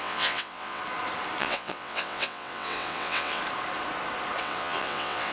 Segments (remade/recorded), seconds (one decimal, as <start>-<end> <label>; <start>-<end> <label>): 0.0-0.8 remade; 0.8-1.4 recorded; 1.4-3.4 remade; 3.4-4.4 recorded; 4.4-5.3 remade